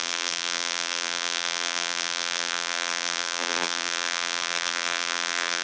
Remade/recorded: remade